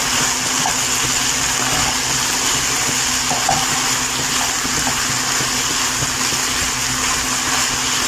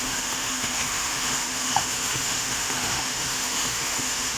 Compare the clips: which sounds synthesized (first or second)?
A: second